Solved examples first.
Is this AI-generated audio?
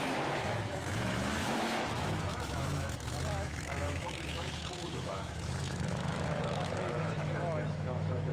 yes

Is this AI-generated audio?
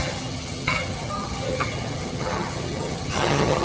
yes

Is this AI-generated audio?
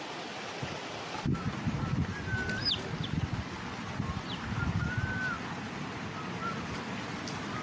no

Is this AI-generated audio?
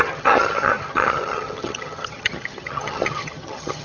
yes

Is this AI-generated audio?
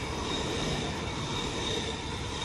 yes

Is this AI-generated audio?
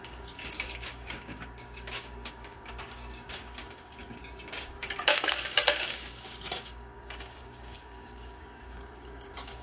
yes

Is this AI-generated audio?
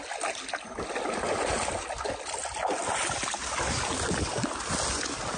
no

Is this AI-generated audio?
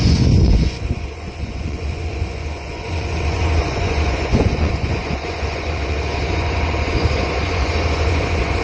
yes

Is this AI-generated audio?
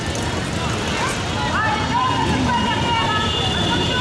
no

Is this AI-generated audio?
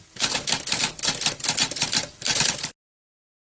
no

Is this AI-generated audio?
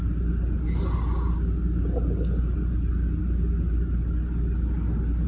no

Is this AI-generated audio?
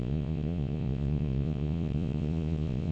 yes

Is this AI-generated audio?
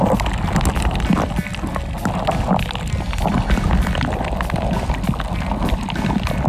no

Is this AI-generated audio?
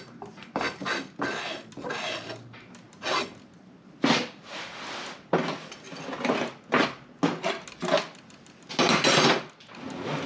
no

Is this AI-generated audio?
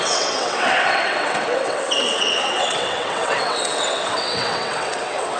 yes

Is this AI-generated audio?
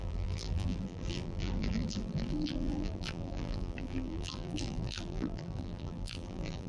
yes